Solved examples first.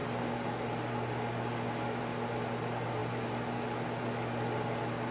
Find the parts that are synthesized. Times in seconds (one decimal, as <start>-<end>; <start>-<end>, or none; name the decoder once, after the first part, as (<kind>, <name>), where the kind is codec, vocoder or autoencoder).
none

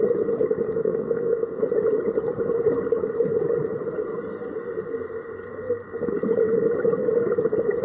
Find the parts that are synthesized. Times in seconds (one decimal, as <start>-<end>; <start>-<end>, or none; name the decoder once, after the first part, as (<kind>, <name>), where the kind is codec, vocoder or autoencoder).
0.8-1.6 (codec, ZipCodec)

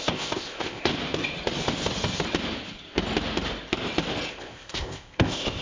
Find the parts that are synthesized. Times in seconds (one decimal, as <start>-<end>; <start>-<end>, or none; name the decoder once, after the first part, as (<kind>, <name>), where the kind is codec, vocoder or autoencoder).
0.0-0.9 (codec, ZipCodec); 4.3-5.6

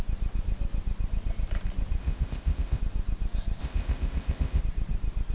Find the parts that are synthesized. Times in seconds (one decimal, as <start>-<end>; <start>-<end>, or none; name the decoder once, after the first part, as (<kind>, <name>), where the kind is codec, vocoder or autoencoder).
2.0-2.8 (codec, ZipCodec); 3.6-4.6

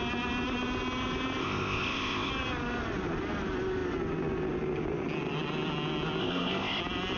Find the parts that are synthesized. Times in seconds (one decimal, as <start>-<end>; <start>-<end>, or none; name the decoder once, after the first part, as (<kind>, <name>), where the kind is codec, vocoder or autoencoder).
1.4-2.3 (codec, ZipCodec); 6.2-6.8

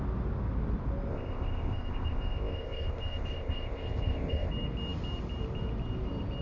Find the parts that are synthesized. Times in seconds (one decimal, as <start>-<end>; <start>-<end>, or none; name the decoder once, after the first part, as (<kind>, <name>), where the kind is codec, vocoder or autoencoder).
1.1-4.5 (codec, ZipCodec)

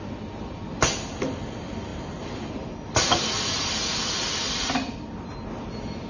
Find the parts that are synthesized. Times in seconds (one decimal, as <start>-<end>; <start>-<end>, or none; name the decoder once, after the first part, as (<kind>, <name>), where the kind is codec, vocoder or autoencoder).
none

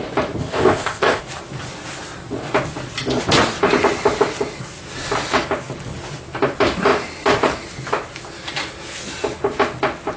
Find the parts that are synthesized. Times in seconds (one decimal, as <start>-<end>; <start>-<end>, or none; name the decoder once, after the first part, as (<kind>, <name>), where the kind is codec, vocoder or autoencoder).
0.4-1.2 (codec, ZipCodec)